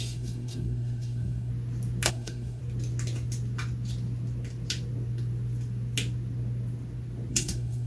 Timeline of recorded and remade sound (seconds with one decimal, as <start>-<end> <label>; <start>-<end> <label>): 0.0-1.5 remade; 1.5-2.1 recorded; 2.1-2.6 remade; 2.6-7.3 recorded; 7.3-7.9 remade